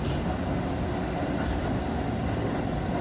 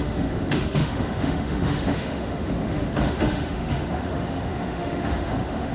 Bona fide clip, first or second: first